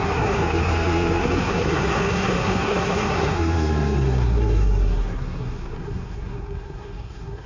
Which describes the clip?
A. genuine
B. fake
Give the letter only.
B